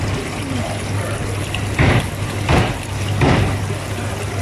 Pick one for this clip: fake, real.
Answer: real